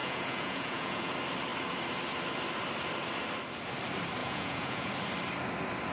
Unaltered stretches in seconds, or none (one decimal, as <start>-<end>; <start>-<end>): 1.1-4.2; 4.9-5.9